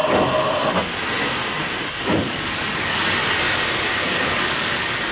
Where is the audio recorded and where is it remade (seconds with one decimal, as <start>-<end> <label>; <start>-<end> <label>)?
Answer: 0.0-2.2 recorded; 2.2-3.0 remade; 3.0-4.0 recorded; 4.0-5.1 remade